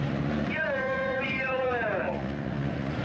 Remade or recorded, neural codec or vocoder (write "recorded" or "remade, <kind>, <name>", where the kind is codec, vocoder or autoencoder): remade, vocoder, Vocos